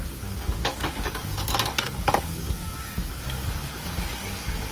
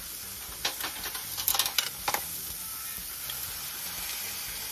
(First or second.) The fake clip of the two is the first